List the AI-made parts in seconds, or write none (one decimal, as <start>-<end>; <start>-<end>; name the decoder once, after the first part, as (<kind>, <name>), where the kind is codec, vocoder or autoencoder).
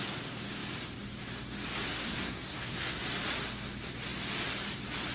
1.9-3.0 (codec, SNAC)